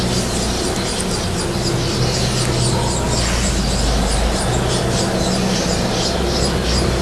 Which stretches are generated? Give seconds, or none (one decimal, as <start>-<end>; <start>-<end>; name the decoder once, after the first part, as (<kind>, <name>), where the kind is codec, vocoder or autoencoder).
none